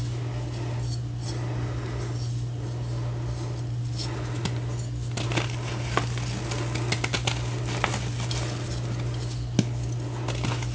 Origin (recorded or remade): recorded